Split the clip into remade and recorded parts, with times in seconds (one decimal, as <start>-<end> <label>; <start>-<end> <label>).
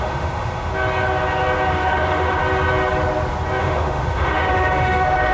0.0-0.7 remade; 0.7-1.7 recorded; 1.7-2.4 remade; 2.4-3.6 recorded; 3.6-5.3 remade